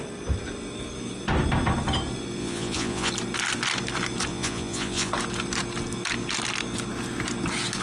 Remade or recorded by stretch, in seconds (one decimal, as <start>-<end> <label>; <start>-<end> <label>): 0.0-2.4 recorded; 2.4-3.1 remade; 3.1-4.3 recorded; 4.3-5.1 remade; 5.1-7.8 recorded